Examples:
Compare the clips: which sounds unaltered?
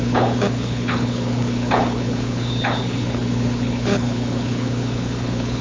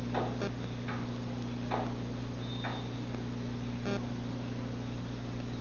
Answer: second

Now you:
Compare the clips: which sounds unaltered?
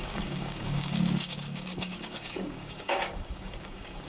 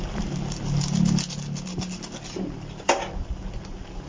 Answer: second